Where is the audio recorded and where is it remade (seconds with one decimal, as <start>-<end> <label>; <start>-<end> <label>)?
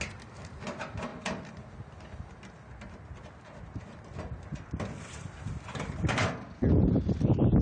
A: 0.0-7.6 recorded